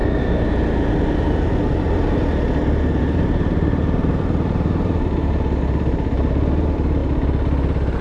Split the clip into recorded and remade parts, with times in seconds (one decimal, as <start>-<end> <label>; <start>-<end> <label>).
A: 0.0-3.0 recorded; 3.0-7.0 remade; 7.0-8.0 recorded